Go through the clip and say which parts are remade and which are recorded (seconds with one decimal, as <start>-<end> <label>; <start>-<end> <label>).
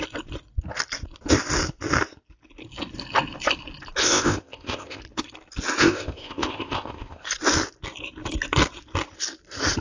0.0-4.0 recorded; 4.0-5.0 remade; 5.0-5.8 recorded; 5.8-7.3 remade; 7.3-9.8 recorded